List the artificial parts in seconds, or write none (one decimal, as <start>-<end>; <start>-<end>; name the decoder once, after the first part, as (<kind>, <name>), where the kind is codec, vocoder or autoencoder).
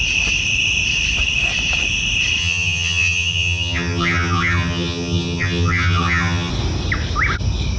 2.4-6.5 (vocoder, HiFi-GAN)